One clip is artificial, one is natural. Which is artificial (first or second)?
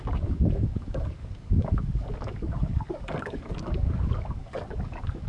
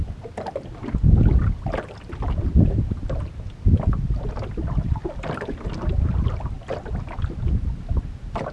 first